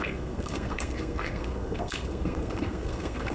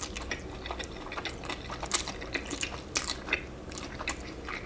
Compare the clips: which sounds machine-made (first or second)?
first